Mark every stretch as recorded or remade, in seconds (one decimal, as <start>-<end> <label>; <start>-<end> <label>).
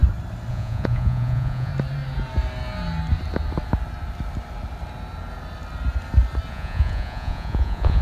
0.0-0.5 recorded; 0.5-1.7 remade; 1.7-6.5 recorded; 6.5-8.0 remade